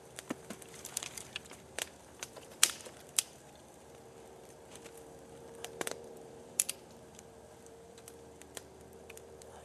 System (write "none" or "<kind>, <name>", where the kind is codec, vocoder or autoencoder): vocoder, BigVGAN v2